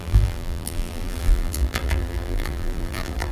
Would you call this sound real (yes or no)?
no